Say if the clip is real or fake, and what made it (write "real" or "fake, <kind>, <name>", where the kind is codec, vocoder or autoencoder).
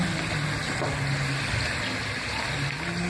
real